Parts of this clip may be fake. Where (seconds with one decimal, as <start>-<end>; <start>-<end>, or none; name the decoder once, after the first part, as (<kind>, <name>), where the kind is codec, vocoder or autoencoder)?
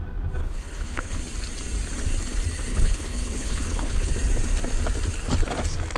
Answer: 0.4-1.2 (codec, HILCodec); 2.7-4.1